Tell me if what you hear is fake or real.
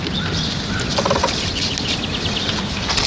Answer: real